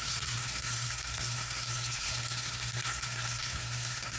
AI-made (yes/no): yes